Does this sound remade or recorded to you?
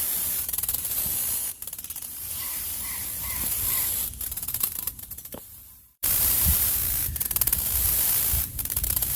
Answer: remade